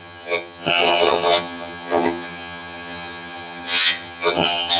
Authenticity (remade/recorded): remade